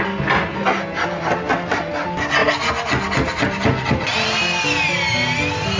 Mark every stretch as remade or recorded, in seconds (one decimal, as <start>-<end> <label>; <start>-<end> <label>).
0.0-5.8 recorded